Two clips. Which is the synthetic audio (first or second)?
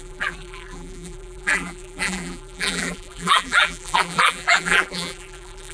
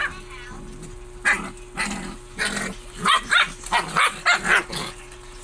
first